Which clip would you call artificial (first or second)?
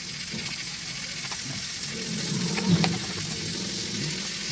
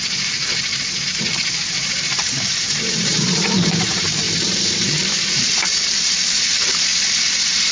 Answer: second